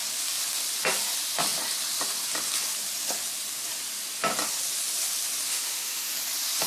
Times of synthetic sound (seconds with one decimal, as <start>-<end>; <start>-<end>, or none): 5.5-6.1